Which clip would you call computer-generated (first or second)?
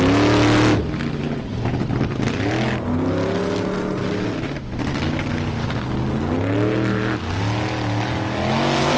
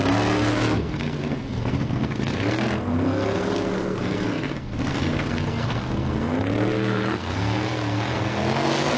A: second